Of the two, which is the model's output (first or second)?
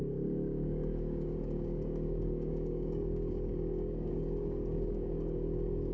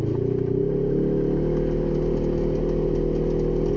first